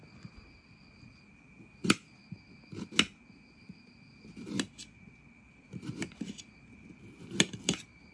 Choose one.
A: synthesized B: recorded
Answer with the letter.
B